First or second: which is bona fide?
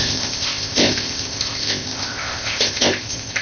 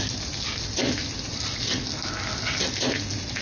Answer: second